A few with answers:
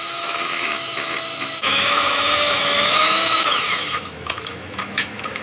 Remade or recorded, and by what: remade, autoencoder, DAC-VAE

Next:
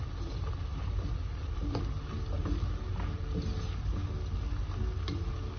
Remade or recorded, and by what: recorded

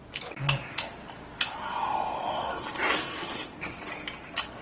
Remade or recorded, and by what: recorded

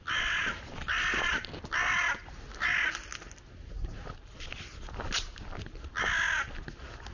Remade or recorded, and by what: recorded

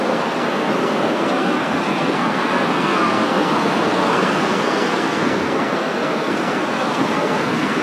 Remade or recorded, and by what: remade, codec, SNAC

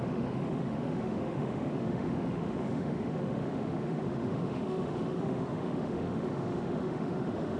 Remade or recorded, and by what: remade, autoencoder, DAC-VAE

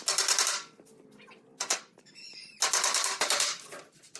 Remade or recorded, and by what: recorded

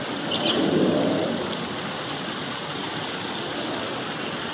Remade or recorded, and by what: recorded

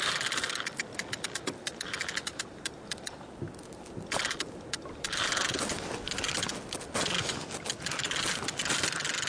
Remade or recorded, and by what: recorded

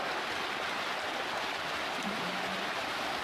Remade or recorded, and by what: recorded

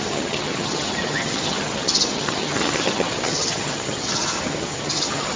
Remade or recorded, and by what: remade, vocoder, HiFi-GAN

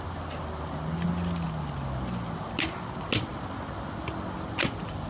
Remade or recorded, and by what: recorded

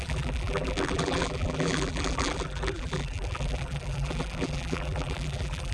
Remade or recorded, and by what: remade, vocoder, BigVGAN v2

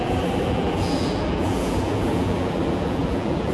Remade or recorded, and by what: remade, vocoder, BigVGAN v2